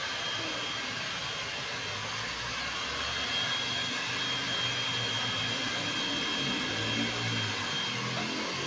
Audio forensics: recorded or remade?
recorded